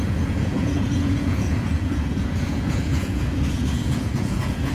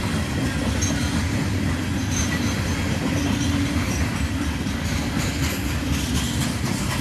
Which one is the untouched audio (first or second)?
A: second